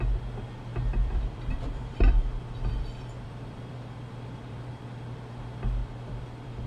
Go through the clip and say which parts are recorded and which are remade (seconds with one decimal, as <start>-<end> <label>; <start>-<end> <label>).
0.0-0.7 recorded; 0.7-4.7 remade; 4.7-5.8 recorded; 5.8-6.7 remade